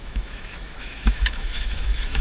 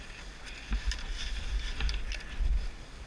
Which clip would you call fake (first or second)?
first